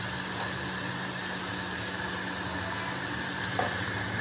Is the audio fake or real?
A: real